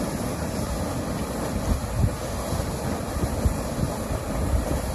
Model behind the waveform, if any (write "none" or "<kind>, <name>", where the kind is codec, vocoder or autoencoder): none